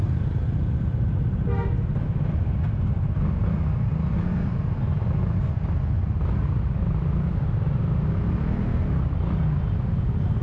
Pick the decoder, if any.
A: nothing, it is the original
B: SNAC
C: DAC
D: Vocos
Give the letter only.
A